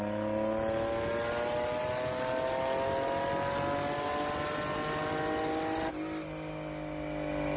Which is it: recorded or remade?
recorded